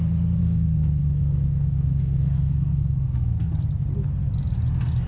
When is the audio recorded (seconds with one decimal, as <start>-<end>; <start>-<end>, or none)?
0.0-0.4; 3.5-5.1